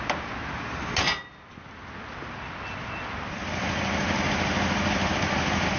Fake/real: real